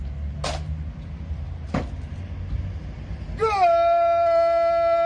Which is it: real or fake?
real